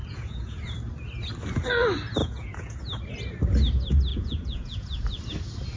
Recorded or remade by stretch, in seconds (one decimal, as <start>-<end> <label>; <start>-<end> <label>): 0.0-0.6 remade; 0.6-2.2 recorded; 2.2-2.8 remade; 2.8-4.1 recorded; 4.1-5.2 remade; 5.2-5.8 recorded

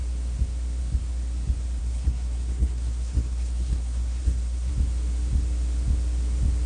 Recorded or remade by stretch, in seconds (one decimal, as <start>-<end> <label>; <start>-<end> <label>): 0.0-1.8 recorded; 1.8-4.7 remade; 4.7-6.7 recorded

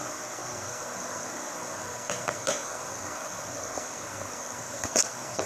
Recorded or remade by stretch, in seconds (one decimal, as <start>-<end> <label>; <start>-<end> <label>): 0.0-5.5 remade

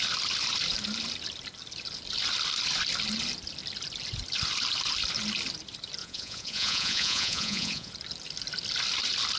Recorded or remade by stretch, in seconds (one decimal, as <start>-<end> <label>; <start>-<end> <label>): 0.0-6.0 recorded; 6.0-7.9 remade; 7.9-9.4 recorded